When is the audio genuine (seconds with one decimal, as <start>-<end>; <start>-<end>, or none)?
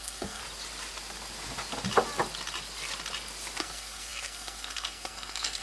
0.4-3.6